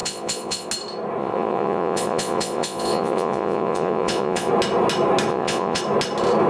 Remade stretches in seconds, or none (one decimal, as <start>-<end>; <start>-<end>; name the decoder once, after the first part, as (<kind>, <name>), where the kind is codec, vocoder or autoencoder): 0.0-0.7 (vocoder, Vocos); 1.2-4.5; 5.3-5.8